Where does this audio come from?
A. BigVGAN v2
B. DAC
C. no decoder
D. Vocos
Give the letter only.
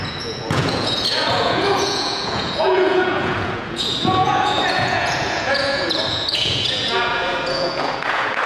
D